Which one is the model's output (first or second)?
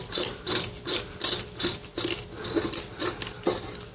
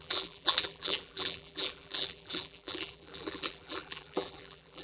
second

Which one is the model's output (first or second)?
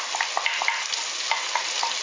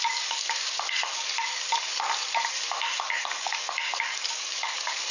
second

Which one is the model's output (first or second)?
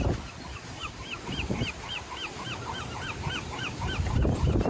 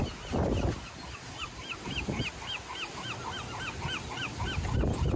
first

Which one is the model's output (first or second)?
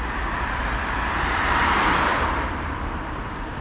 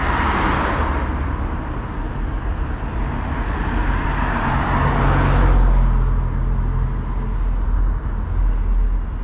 first